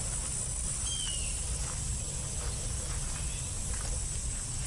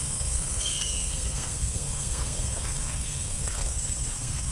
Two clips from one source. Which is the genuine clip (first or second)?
first